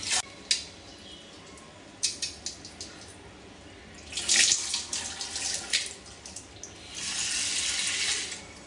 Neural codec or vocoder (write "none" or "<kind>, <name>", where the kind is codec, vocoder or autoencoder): none